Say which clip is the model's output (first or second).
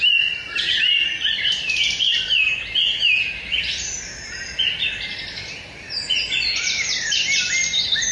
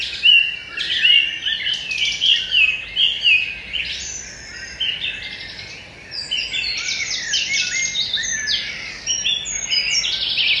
first